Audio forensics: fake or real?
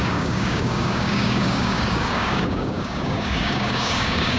fake